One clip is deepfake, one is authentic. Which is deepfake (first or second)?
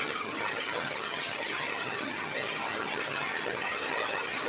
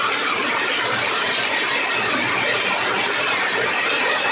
first